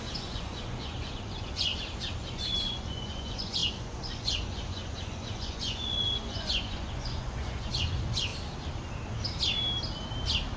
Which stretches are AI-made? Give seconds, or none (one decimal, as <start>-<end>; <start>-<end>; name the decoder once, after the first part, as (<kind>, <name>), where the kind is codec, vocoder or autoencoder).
0.0-1.7 (vocoder, Vocos); 2.3-8.3